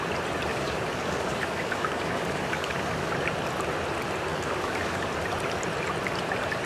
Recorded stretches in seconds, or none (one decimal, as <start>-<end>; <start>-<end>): 0.0-0.5; 3.1-4.3; 5.1-6.7

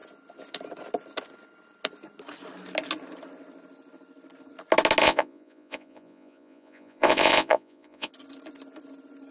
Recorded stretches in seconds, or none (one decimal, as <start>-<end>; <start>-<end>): 0.0-5.0; 8.1-9.3